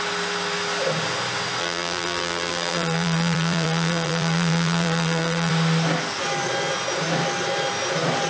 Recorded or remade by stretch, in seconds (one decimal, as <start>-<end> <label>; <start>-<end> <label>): 0.0-1.6 recorded; 1.6-5.5 remade; 5.5-8.3 recorded